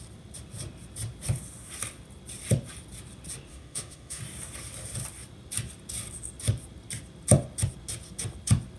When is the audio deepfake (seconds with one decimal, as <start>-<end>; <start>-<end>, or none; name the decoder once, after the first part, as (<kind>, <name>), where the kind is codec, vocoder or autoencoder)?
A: 3.5-4.2 (autoencoder, DAC-VAE)